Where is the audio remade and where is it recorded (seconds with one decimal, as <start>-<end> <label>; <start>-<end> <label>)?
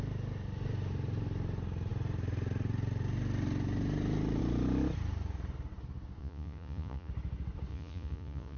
0.0-6.2 recorded; 6.2-7.1 remade; 7.1-7.7 recorded; 7.7-8.6 remade